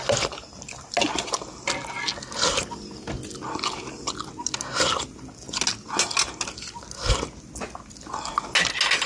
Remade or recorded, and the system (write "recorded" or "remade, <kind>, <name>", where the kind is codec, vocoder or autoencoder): recorded